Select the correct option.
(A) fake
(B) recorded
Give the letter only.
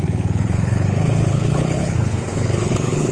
A